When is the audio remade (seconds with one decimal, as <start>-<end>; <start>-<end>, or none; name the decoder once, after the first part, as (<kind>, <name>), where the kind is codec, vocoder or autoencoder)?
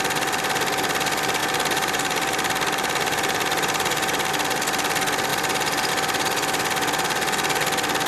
1.4-4.3 (vocoder, BigVGAN v2); 5.3-5.9